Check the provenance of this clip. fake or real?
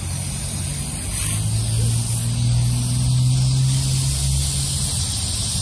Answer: real